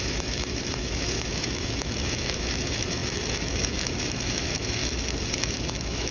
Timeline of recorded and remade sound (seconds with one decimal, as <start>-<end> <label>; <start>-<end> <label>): 0.0-4.8 remade; 4.8-5.4 recorded; 5.4-6.1 remade